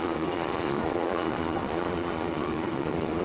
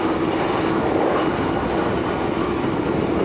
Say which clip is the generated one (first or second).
first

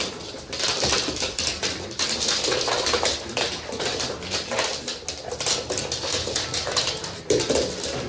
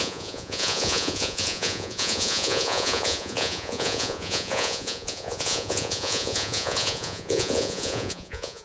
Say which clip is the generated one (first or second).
second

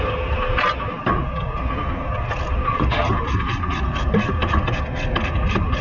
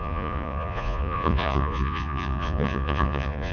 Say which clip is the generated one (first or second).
second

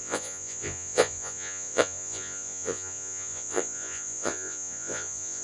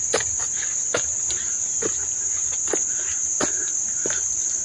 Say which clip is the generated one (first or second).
first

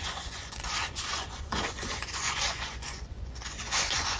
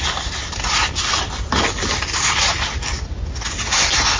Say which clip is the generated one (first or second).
first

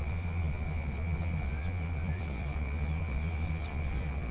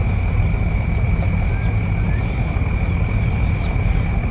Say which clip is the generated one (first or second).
first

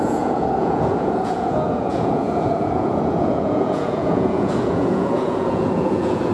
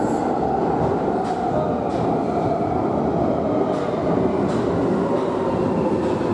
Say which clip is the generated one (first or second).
first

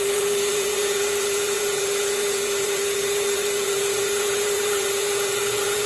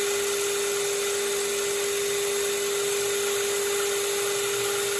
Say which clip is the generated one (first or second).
first